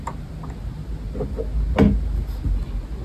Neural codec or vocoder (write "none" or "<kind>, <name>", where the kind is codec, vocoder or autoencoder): none